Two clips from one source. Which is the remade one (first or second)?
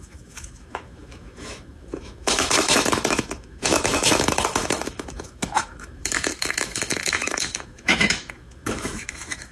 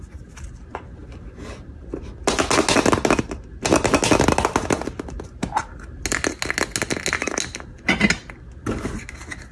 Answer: first